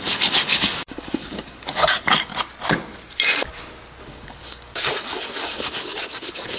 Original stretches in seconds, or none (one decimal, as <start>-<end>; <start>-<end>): 2.3-4.0